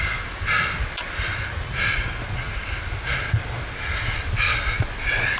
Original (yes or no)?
yes